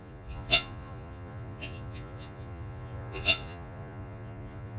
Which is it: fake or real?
fake